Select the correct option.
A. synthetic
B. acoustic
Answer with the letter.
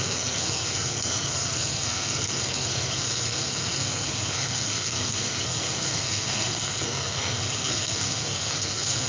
A